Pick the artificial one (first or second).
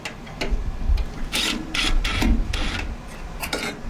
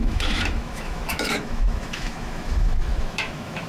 second